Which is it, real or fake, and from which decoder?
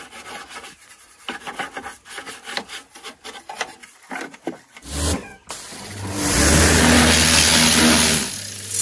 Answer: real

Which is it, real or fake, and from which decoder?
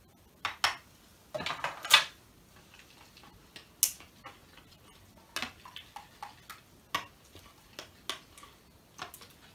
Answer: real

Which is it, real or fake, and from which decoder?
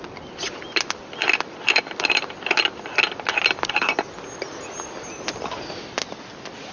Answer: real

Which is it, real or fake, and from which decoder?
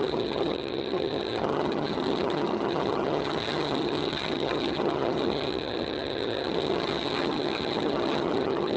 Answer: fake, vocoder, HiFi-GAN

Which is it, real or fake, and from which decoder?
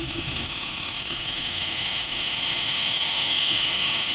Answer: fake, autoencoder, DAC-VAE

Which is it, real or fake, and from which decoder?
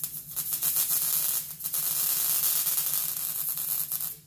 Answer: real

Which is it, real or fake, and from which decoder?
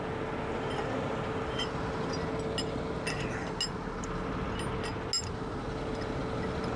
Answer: real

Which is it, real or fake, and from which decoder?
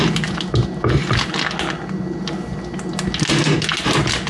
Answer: real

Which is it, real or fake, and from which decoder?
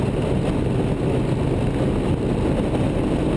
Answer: real